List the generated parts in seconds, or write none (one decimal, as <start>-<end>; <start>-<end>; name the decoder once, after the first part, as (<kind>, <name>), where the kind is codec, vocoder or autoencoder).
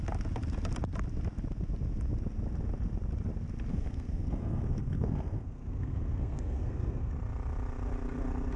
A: 3.7-7.1 (codec, SNAC)